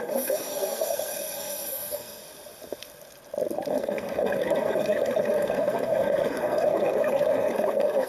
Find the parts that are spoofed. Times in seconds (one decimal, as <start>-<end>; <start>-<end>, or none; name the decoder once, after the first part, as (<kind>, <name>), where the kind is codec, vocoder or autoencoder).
0.0-2.2 (codec, SNAC); 3.7-8.1